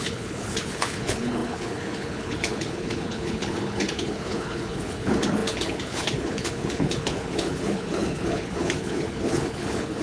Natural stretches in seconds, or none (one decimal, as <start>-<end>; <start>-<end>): none